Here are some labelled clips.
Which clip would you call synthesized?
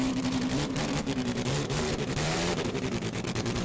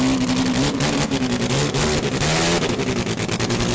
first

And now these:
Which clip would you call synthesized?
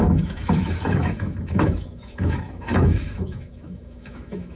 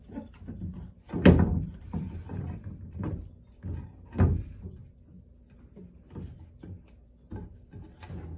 first